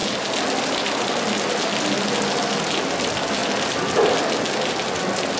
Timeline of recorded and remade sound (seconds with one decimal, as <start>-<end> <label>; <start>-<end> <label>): 0.0-5.4 recorded